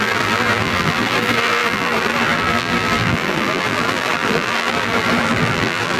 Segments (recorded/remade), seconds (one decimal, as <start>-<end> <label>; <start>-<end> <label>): 0.0-6.0 remade